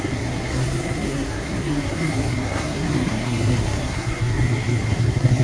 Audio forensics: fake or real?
fake